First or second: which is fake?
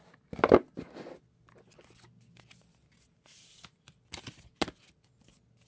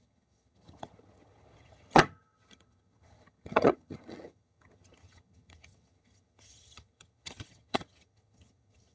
second